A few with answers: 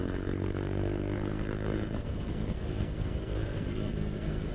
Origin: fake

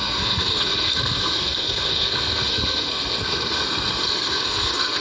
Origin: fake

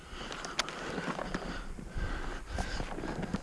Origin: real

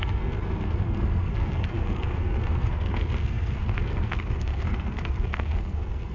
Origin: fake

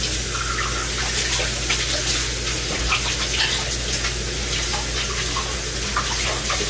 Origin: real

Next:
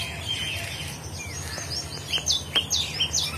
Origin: real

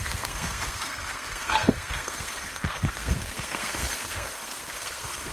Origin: fake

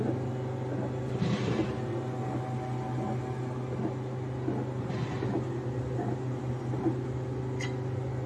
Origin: real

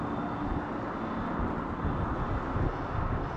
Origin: real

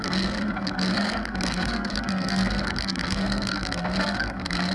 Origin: fake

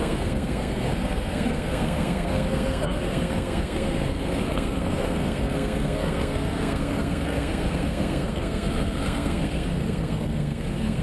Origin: fake